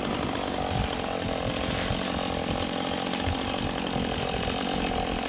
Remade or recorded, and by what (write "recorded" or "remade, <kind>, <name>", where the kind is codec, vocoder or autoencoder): recorded